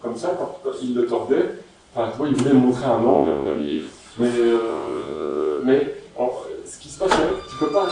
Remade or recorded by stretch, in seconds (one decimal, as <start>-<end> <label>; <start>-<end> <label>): 0.0-3.1 recorded; 3.1-3.9 remade; 3.9-4.7 recorded; 4.7-5.6 remade; 5.6-7.9 recorded